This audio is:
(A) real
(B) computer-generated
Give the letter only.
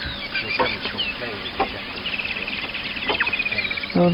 A